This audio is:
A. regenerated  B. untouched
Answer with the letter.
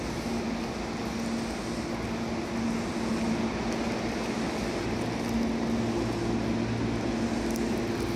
B